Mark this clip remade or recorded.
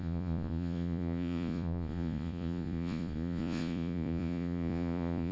remade